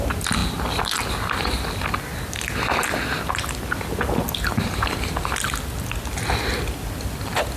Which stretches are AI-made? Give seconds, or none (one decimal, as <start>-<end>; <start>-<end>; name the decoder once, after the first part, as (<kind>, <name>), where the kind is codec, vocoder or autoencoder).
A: none